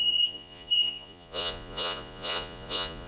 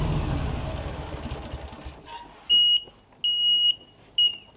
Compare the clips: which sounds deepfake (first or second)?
first